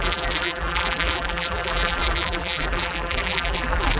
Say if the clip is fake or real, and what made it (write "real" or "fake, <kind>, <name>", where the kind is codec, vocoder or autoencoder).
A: fake, vocoder, BigVGAN v2